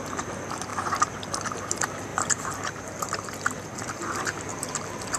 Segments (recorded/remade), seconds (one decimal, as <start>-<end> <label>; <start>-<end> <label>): 0.0-0.7 recorded; 0.7-1.3 remade; 1.3-2.1 recorded; 2.1-3.3 remade; 3.3-5.2 recorded